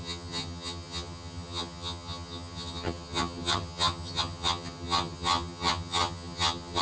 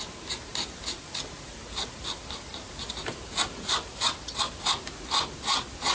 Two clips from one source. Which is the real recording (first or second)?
second